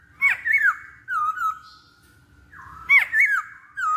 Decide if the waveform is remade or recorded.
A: recorded